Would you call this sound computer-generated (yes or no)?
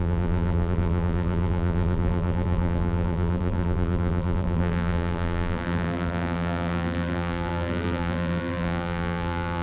yes